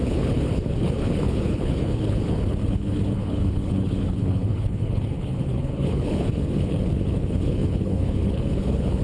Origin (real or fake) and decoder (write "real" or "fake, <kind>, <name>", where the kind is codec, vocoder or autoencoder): fake, codec, HILCodec